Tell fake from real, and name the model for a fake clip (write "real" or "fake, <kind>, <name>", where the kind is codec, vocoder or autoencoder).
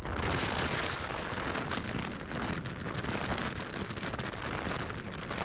real